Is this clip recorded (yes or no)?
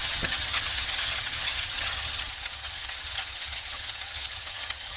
no